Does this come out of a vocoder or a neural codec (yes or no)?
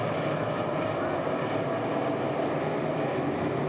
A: no